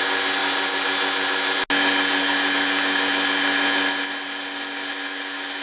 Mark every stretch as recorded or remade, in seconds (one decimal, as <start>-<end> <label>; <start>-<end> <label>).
0.0-5.6 recorded